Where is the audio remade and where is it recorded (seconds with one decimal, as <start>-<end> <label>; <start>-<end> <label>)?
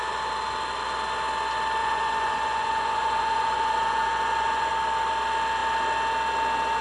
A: 0.0-1.8 recorded; 1.8-4.7 remade; 4.7-6.8 recorded